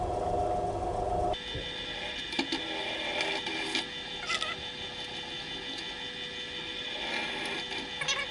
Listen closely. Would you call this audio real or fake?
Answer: real